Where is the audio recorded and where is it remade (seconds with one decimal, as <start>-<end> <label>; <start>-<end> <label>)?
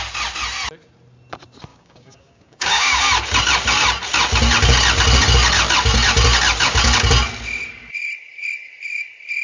0.0-1.7 recorded; 1.7-3.0 remade; 3.0-9.4 recorded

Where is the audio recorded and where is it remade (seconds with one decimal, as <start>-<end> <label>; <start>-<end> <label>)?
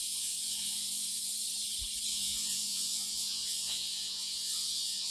0.0-1.3 remade; 1.3-2.1 recorded; 2.1-5.1 remade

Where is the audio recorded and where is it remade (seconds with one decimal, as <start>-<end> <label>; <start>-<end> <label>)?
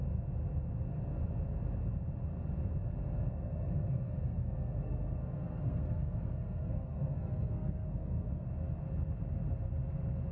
0.0-3.3 recorded; 3.3-8.5 remade; 8.5-10.3 recorded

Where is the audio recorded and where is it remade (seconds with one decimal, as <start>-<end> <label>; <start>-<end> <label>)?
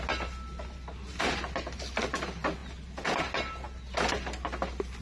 0.0-5.0 recorded